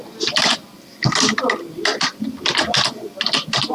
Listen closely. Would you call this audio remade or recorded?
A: recorded